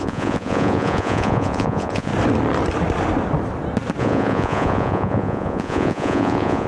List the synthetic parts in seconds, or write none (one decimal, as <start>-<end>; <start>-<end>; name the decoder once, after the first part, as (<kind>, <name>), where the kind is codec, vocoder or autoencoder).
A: 0.0-2.1 (vocoder, Vocos); 4.0-6.7